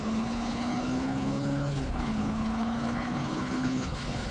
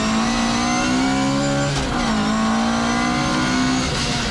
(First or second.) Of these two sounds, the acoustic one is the second